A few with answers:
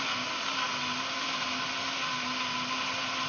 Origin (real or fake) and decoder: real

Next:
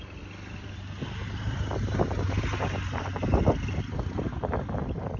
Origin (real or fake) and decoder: real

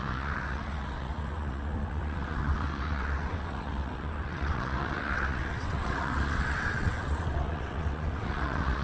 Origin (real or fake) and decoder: fake, vocoder, WaveNeXt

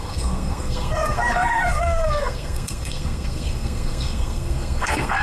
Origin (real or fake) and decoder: fake, codec, SNAC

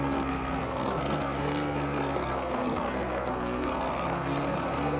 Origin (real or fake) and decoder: fake, codec, SNAC